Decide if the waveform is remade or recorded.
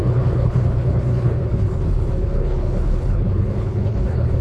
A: remade